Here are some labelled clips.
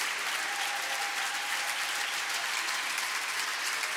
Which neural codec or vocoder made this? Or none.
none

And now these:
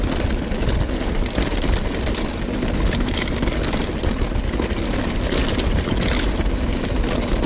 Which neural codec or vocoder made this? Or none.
none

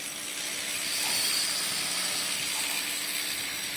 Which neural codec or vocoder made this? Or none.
none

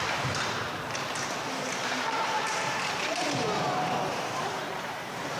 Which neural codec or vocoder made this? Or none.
vocoder, BigVGAN v2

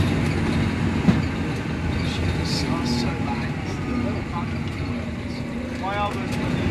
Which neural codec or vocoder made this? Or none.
none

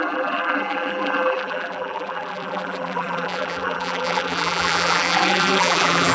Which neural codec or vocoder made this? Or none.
vocoder, BigVGAN v2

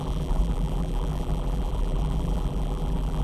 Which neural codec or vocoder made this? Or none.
vocoder, BigVGAN v2